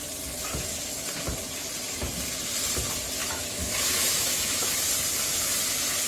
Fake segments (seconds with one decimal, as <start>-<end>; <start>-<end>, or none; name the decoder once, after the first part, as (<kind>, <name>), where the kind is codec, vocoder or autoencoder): 3.2-4.7 (autoencoder, DAC-VAE)

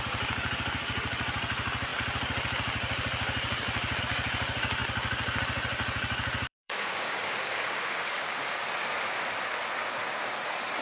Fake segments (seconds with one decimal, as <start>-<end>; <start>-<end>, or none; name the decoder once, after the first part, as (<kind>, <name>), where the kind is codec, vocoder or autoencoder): 6.5-8.4 (codec, DAC)

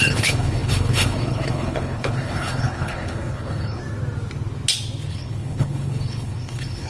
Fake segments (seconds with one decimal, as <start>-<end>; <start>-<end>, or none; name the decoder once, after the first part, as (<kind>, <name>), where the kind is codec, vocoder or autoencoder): 0.0-3.8 (codec, HILCodec); 5.1-6.9

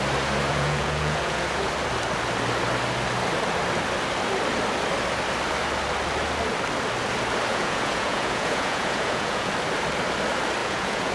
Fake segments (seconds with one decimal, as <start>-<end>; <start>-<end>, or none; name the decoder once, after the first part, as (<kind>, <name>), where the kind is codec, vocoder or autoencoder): 0.5-1.7 (vocoder, Vocos); 7.5-9.5; 10.6-11.1

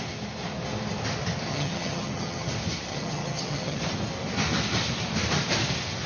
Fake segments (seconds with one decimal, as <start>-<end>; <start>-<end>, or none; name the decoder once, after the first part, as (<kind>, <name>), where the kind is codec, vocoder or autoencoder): 1.5-2.5 (vocoder, HiFi-GAN); 2.9-3.8

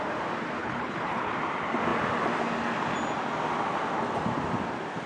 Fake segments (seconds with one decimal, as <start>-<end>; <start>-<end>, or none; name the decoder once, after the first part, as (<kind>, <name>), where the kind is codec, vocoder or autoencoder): 0.6-1.3 (codec, HILCodec)

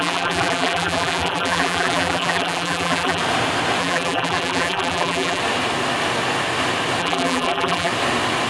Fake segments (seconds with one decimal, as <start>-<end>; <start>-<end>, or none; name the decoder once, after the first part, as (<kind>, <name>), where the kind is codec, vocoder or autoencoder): 0.0-3.2 (vocoder, BigVGAN v2); 3.8-5.4; 7.0-7.9